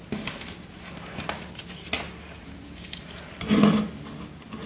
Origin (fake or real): real